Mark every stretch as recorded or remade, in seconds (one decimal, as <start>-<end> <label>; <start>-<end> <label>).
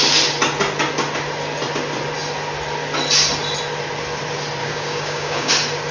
0.0-4.6 recorded; 4.6-5.5 remade; 5.5-5.9 recorded